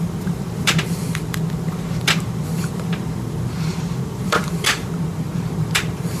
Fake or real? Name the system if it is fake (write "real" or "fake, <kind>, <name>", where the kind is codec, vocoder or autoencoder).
fake, vocoder, BigVGAN v2